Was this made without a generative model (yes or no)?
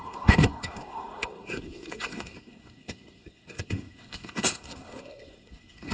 no